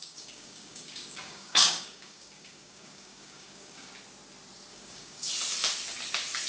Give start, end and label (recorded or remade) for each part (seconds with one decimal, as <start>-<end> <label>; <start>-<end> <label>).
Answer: 0.0-3.9 remade; 3.9-4.7 recorded; 4.7-5.3 remade; 5.3-6.5 recorded